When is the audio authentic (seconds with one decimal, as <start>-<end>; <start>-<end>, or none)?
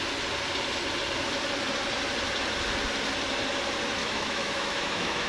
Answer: 0.0-4.0